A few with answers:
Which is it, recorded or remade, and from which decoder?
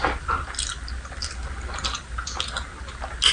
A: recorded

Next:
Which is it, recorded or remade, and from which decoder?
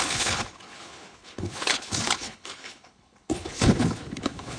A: remade, codec, HILCodec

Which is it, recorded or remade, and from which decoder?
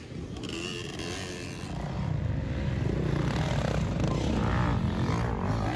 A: recorded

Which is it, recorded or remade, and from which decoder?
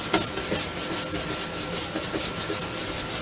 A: recorded